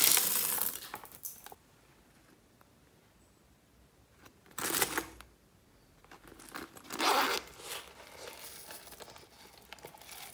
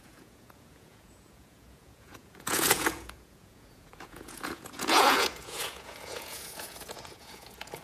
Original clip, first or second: first